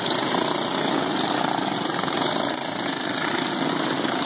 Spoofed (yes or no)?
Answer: no